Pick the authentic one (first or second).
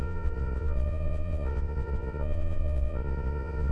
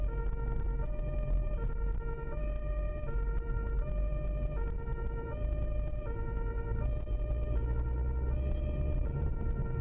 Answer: second